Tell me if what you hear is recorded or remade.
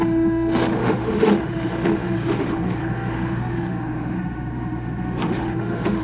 remade